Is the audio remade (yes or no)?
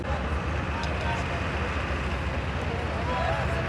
no